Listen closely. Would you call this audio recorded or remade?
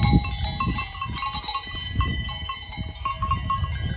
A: recorded